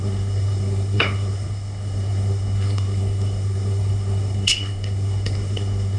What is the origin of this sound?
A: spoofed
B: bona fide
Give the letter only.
A